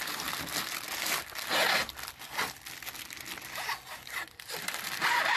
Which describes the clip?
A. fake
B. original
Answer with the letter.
B